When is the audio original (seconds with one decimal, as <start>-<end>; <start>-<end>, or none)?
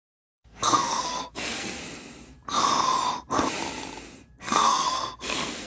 1.8-4.4